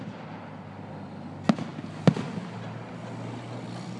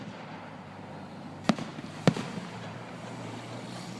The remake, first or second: second